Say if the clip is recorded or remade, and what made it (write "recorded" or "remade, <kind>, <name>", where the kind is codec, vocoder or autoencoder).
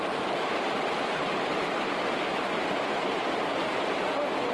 remade, vocoder, BigVGAN v2